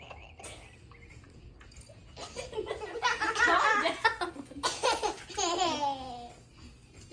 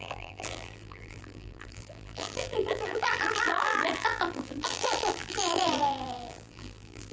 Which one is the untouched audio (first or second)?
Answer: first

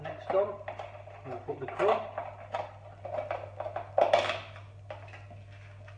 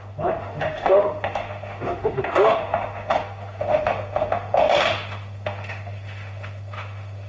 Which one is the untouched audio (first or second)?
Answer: first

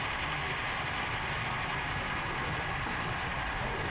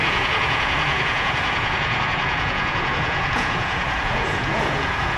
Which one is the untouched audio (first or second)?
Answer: first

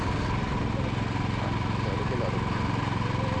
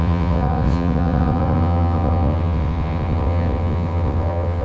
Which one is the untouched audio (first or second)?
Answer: first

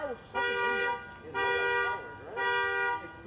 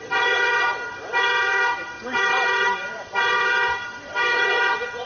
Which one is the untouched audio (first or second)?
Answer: first